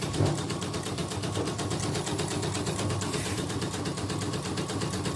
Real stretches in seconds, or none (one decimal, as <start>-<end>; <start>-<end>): 1.0-2.9